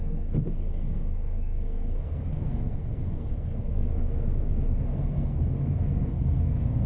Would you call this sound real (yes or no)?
no